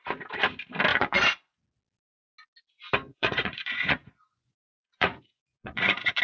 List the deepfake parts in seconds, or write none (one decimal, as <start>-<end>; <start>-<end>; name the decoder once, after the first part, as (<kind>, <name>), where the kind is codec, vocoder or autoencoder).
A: 0.9-1.6 (vocoder, Vocos); 3.1-6.2